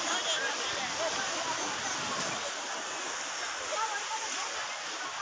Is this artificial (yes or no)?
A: no